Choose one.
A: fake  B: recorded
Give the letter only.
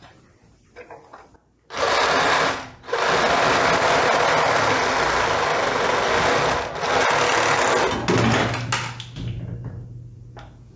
B